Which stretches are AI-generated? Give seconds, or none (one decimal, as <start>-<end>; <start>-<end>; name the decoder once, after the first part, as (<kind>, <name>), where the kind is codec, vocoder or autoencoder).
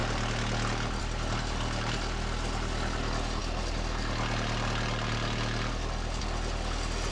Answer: none